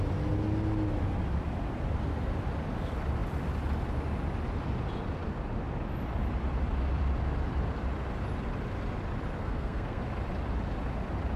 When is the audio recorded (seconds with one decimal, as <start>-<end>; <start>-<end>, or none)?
0.0-9.4; 10.0-11.4